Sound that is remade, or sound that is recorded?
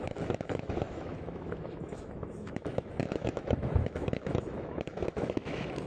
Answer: remade